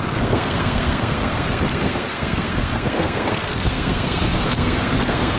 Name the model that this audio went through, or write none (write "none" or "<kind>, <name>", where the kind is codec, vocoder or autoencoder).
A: codec, SNAC